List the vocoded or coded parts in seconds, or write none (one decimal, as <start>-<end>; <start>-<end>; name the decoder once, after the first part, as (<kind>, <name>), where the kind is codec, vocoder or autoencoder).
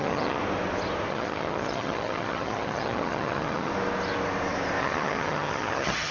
0.0-0.4 (vocoder, HiFi-GAN); 1.1-3.7; 4.8-6.1